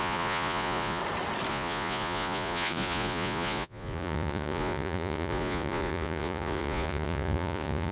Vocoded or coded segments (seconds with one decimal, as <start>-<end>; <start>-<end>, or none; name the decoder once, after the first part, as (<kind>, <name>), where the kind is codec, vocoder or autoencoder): 0.0-1.0 (vocoder, Vocos); 1.5-7.9